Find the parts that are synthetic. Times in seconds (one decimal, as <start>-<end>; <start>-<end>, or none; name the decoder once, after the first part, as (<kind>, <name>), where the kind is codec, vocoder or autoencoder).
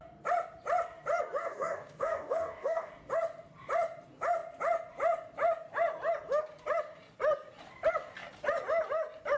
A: 1.4-2.9 (codec, DAC)